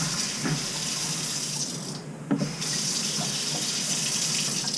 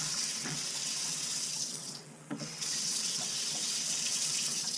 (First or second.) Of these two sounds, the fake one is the second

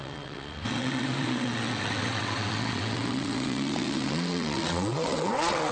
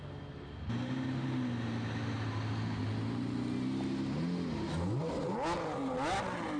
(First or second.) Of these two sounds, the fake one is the first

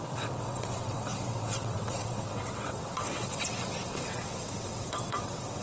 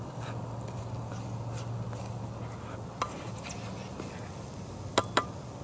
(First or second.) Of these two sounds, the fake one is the first